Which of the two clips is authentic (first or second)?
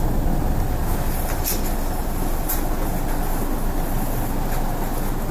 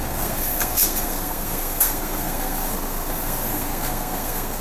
first